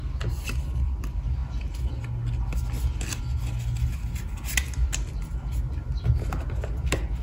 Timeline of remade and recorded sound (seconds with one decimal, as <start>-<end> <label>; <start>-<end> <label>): 0.0-7.2 recorded